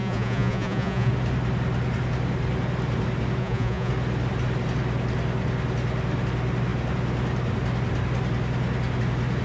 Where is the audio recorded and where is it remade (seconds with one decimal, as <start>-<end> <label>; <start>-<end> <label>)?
0.0-1.1 remade; 1.1-3.4 recorded; 3.4-3.9 remade; 3.9-9.4 recorded